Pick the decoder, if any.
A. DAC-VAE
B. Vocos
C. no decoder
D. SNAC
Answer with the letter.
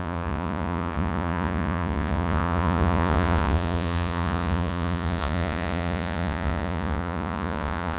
B